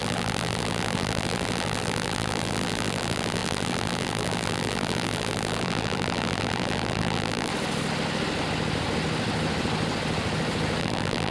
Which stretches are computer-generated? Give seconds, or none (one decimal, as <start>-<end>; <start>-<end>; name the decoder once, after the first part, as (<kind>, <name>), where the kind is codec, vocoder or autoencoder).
0.0-7.5 (vocoder, BigVGAN v2); 10.8-11.3